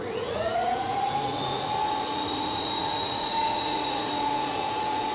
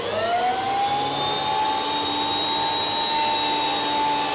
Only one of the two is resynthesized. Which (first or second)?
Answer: first